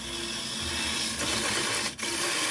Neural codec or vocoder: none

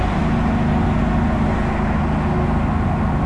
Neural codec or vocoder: none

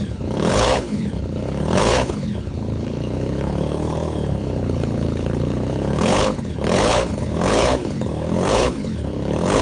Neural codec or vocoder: codec, HILCodec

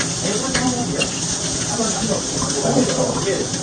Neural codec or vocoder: none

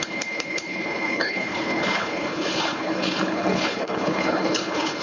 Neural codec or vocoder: codec, HILCodec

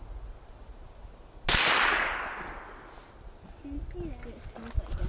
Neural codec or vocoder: none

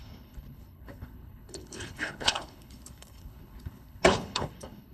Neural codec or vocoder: codec, HILCodec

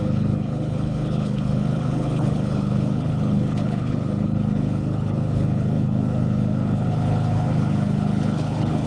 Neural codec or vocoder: codec, HILCodec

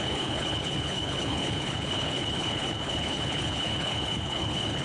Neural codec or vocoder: codec, HILCodec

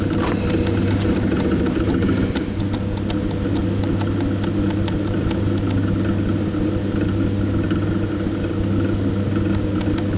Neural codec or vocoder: none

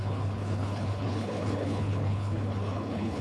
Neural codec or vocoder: codec, HILCodec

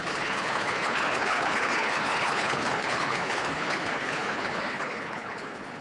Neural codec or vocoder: codec, HILCodec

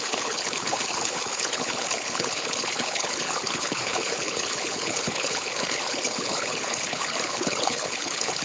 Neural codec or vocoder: codec, HILCodec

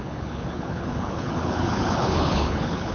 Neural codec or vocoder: codec, HILCodec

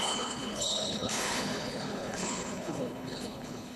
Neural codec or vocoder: codec, HILCodec